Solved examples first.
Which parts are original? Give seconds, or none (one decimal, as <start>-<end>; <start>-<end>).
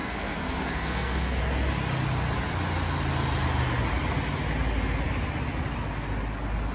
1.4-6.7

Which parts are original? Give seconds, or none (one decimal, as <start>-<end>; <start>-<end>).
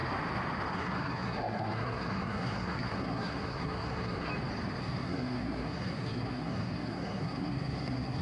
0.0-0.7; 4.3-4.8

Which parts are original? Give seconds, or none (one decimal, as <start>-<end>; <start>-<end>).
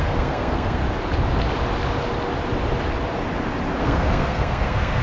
0.8-3.8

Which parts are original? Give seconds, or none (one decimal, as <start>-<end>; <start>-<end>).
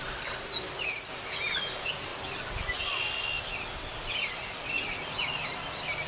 0.0-6.1